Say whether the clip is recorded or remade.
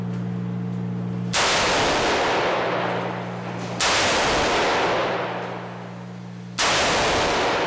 recorded